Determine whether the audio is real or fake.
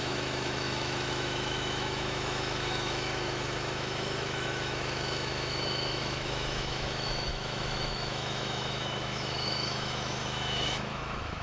fake